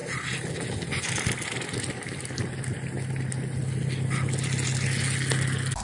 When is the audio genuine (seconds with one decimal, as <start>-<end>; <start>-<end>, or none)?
0.0-5.8

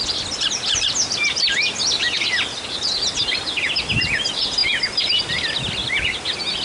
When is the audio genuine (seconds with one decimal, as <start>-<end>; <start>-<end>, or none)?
0.0-6.6

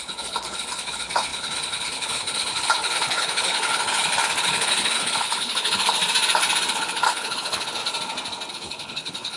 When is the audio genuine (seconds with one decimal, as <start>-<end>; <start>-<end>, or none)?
6.0-6.7; 7.8-8.5

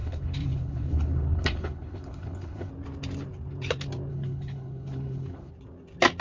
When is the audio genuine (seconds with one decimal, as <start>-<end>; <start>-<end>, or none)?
2.7-4.1; 5.5-6.2

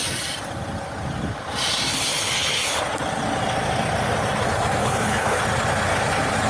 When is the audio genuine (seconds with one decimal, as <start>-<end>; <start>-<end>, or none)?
0.0-1.9; 2.8-4.8; 5.4-6.5

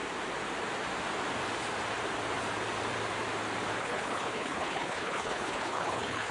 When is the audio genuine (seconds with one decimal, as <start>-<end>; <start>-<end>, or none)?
0.0-3.8